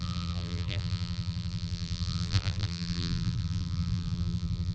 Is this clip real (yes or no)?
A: no